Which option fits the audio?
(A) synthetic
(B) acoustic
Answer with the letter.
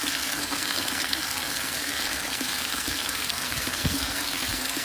A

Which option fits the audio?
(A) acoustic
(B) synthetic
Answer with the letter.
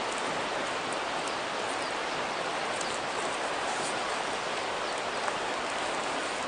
A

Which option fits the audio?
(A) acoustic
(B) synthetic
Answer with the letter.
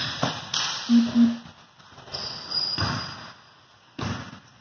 A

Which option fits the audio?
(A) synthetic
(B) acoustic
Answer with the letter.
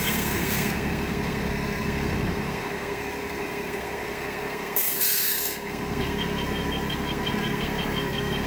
A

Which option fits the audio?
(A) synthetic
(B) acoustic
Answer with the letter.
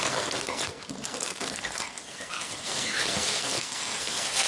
A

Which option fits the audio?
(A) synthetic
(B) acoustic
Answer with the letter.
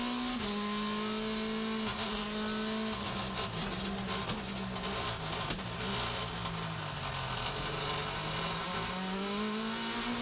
B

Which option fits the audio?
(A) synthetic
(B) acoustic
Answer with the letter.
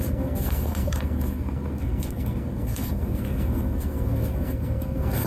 A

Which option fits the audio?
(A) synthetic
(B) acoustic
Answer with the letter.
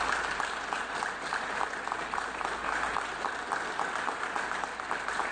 B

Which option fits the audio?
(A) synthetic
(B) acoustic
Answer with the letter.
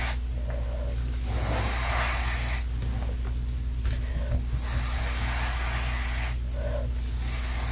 B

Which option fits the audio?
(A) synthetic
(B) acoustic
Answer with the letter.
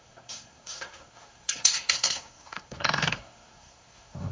A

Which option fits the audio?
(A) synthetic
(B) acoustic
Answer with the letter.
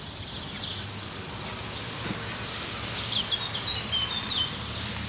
B